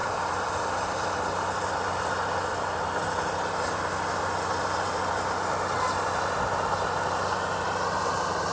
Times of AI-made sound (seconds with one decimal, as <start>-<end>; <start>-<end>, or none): 0.0-2.0